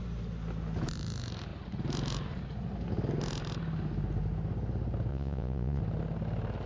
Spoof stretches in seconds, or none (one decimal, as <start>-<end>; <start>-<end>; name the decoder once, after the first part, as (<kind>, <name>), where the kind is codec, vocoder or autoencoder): 5.1-5.8 (vocoder, Vocos)

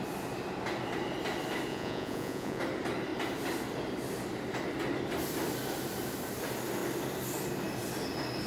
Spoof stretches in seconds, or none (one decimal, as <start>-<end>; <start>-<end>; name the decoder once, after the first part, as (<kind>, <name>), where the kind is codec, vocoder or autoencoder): 1.7-2.6 (vocoder, Vocos)

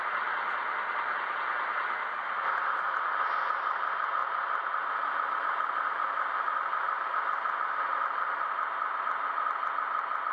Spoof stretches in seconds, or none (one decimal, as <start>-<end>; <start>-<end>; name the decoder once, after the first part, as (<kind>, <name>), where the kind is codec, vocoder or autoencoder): none

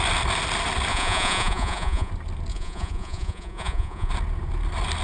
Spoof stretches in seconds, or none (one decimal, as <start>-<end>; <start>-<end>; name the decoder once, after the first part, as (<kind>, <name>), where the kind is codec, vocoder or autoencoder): 0.9-2.1 (vocoder, Vocos); 2.5-4.1

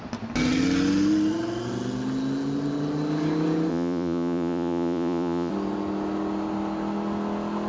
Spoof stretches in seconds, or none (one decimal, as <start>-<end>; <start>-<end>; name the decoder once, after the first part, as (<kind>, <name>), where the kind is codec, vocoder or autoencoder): 3.7-5.5 (vocoder, Vocos)

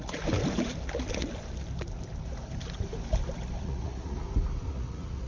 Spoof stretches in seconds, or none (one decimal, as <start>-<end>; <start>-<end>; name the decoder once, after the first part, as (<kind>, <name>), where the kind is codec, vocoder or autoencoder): 0.0-0.4 (vocoder, Vocos); 3.6-4.2; 4.7-5.3

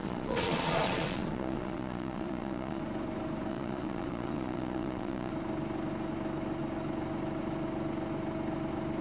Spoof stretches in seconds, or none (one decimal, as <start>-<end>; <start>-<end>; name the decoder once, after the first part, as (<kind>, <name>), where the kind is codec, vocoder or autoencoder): 0.0-2.8 (vocoder, Vocos); 3.5-5.3